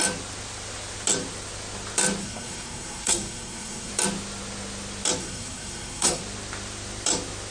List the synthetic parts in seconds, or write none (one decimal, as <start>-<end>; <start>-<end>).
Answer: 2.2-3.9; 5.2-6.2